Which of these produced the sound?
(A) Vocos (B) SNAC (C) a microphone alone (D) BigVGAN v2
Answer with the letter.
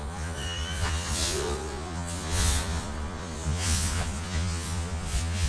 A